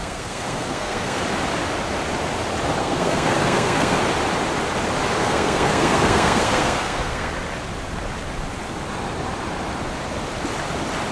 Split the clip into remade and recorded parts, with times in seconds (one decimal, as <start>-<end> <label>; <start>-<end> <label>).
0.0-1.2 remade; 1.2-2.8 recorded; 2.8-4.0 remade; 4.0-5.2 recorded; 5.2-7.3 remade; 7.3-11.1 recorded